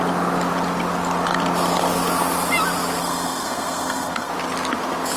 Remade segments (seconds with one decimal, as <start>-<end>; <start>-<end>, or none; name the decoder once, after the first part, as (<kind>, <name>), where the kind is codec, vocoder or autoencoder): 3.0-4.3 (codec, SNAC)